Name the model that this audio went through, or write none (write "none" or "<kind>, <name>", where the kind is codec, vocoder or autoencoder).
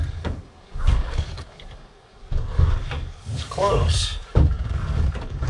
codec, DAC